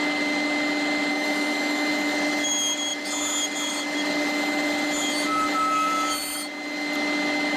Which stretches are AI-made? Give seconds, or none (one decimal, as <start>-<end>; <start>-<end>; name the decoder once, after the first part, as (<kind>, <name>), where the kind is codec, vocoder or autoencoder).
1.1-1.9 (autoencoder, DAC-VAE)